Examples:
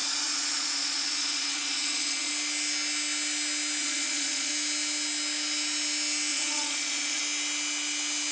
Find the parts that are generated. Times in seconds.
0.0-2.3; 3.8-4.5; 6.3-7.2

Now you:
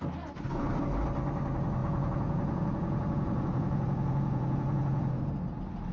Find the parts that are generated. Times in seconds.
1.8-5.3

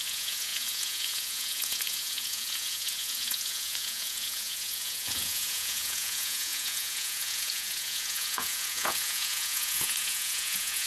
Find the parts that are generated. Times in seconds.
0.0-10.9

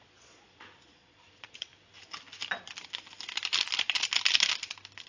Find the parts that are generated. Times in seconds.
0.0-1.7

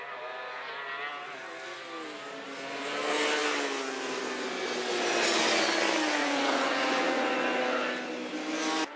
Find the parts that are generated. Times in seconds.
6.2-7.6